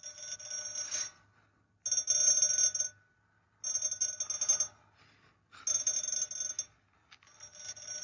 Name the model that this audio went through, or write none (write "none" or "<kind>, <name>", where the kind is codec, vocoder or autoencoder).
none